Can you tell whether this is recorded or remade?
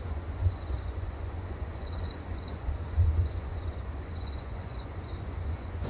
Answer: remade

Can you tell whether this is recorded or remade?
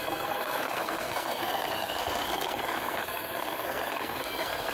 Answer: remade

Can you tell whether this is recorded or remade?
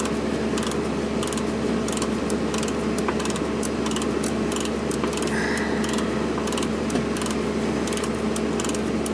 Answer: recorded